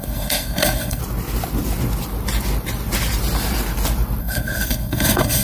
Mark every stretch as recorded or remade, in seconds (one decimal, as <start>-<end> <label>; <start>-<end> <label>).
0.0-1.0 remade; 1.0-4.2 recorded; 4.2-5.4 remade